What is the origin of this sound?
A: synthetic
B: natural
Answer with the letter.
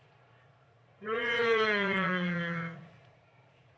A